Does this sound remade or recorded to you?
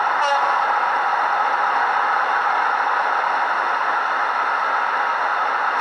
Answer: recorded